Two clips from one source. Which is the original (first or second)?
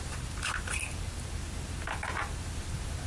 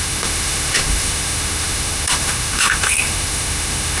first